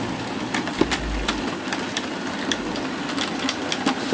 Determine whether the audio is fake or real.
real